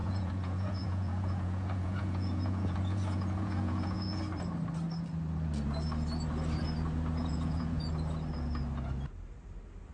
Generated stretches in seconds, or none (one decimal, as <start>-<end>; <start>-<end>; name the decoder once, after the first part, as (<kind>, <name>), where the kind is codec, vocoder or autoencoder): 0.0-4.2 (vocoder, Vocos); 7.2-7.9